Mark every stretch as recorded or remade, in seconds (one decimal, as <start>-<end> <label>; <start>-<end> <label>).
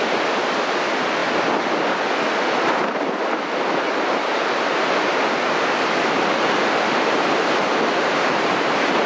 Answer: 0.0-9.1 recorded